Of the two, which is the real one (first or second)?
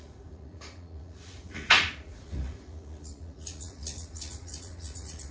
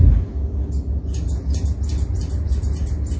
second